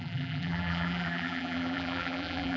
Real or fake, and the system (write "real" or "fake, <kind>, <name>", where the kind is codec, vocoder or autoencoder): fake, vocoder, BigVGAN v2